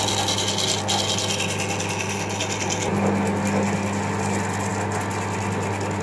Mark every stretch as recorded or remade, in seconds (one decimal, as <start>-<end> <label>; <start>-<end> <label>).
0.0-6.0 recorded